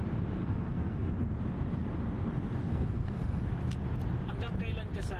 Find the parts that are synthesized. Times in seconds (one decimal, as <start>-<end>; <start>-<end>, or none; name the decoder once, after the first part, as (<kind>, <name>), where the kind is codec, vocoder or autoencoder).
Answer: 0.4-1.1 (codec, SNAC); 2.7-3.4